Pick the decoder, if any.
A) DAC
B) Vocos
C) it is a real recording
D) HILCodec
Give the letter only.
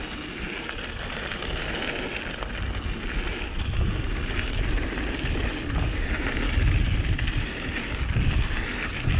C